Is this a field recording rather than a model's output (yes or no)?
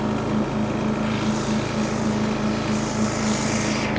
yes